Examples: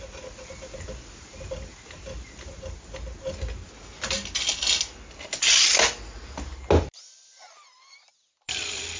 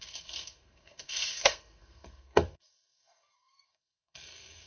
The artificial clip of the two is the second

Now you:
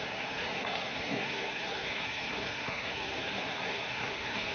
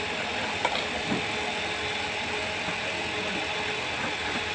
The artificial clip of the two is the first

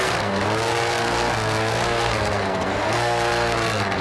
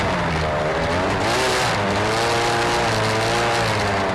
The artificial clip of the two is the first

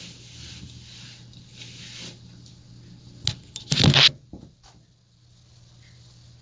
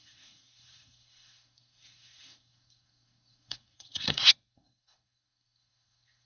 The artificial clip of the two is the second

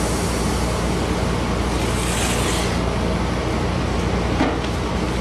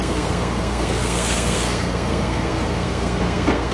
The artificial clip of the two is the second